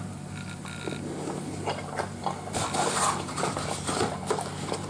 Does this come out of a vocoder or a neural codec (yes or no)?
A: no